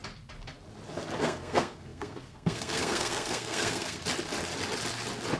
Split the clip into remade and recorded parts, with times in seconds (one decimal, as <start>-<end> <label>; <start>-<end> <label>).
0.0-1.2 recorded; 1.2-4.0 remade; 4.0-5.4 recorded